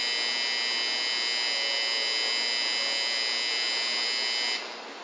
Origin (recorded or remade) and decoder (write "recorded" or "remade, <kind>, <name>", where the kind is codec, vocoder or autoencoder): recorded